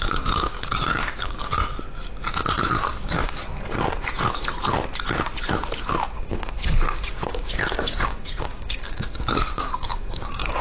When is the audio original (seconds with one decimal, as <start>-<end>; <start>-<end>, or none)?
1.4-2.9; 3.4-6.2